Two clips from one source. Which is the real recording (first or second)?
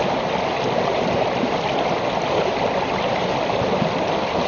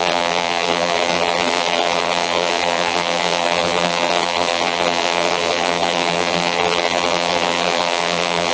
first